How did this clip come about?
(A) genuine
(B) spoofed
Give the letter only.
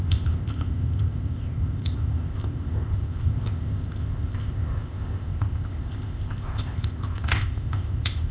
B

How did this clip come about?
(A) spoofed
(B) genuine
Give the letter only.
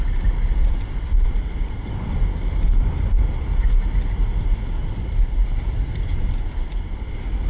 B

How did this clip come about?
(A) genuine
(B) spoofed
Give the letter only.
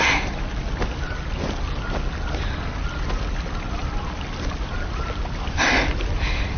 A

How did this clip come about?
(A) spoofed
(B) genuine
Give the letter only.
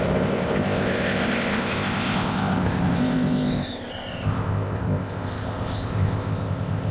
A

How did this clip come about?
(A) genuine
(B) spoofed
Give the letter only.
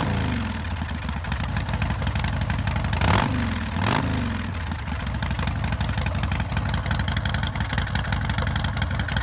A